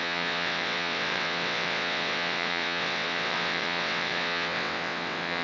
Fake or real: fake